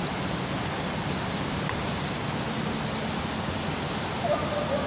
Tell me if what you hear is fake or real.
real